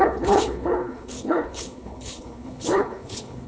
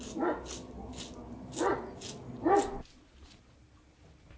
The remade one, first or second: first